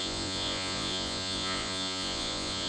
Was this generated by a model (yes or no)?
yes